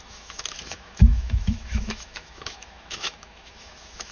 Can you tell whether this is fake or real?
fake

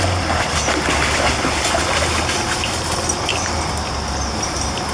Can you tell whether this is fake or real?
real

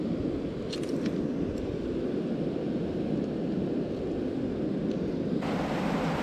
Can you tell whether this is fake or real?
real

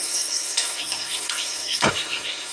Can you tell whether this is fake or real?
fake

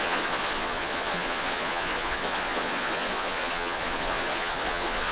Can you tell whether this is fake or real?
fake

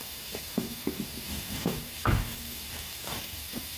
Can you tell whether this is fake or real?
fake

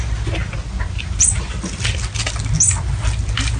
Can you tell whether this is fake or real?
real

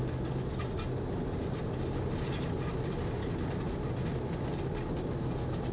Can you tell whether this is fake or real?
real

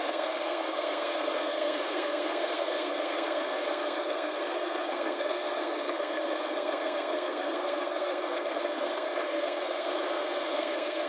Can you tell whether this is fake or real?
fake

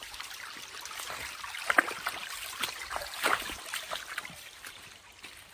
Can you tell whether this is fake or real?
fake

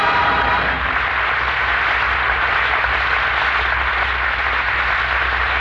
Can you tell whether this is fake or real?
real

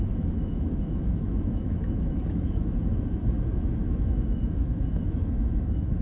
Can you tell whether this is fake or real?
fake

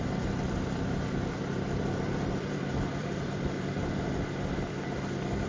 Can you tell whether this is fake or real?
fake